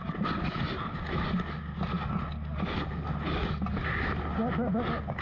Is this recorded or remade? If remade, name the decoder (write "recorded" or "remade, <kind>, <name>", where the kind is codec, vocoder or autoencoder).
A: recorded